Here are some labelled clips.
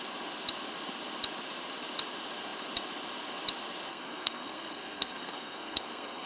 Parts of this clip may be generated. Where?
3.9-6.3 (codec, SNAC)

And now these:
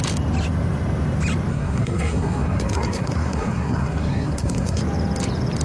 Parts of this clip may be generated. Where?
1.5-4.8 (codec, SNAC)